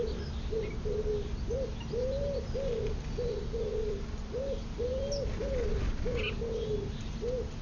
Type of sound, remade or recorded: recorded